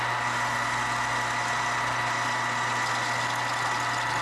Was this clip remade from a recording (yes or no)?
no